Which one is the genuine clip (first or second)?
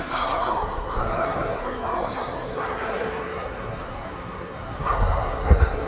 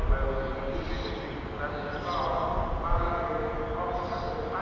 second